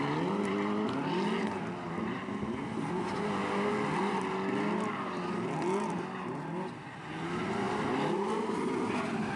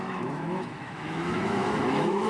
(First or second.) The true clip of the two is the first